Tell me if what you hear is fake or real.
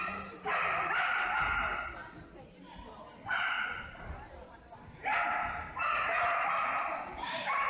real